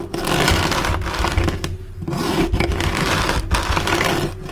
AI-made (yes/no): no